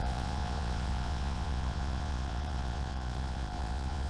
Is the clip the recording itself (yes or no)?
no